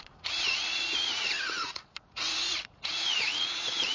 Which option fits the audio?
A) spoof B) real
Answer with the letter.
A